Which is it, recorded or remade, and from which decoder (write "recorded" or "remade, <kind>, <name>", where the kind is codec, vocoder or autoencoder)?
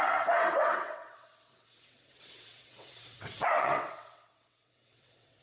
remade, vocoder, WaveNeXt